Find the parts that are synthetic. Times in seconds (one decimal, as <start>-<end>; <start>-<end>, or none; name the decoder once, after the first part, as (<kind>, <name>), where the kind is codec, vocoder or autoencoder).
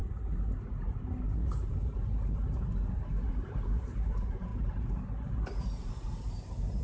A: 3.3-6.8 (vocoder, BigVGAN v2)